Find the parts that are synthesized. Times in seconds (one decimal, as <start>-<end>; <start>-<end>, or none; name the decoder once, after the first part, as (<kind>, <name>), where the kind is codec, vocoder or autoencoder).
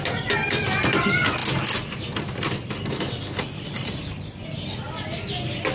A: none